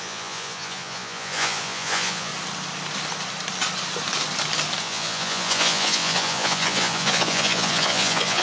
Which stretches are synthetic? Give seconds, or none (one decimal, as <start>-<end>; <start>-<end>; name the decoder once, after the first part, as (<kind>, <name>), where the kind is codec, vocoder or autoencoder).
0.0-2.3 (vocoder, Vocos); 4.8-8.4